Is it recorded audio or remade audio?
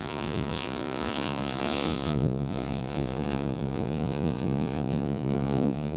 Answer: remade